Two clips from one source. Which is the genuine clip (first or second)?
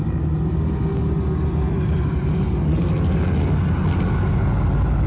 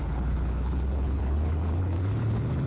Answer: first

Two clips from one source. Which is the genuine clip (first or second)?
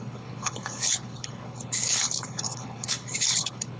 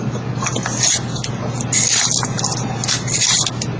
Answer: second